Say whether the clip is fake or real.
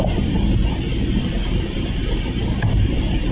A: real